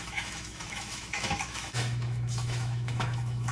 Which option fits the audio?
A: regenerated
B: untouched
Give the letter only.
A